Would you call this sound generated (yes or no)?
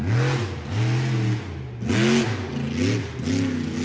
no